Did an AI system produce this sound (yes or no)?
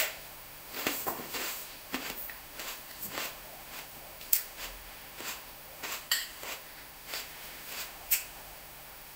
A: yes